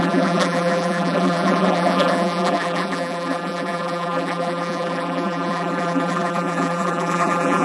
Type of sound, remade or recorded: remade